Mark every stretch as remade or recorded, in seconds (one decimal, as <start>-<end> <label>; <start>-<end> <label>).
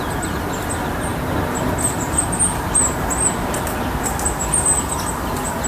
0.0-5.7 recorded